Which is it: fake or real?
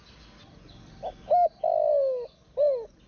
real